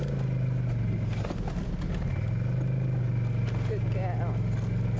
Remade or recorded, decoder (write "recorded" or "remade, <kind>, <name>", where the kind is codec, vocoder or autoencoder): recorded